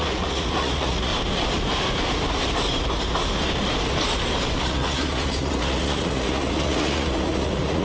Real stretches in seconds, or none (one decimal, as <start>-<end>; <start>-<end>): 1.1-4.6